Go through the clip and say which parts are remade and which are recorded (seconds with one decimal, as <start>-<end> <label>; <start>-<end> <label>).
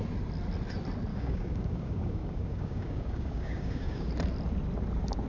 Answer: 0.0-1.1 recorded; 1.1-4.1 remade; 4.1-5.3 recorded